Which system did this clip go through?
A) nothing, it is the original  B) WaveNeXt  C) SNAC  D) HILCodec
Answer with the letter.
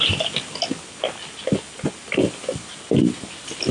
A